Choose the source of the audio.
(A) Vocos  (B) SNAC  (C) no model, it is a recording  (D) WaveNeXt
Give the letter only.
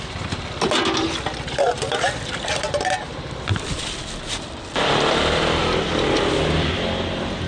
C